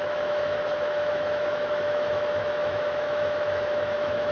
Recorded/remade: remade